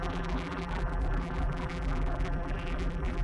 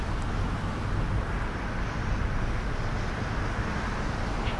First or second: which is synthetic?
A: first